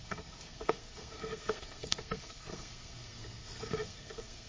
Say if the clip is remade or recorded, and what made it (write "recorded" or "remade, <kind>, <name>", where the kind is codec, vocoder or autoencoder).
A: remade, codec, SNAC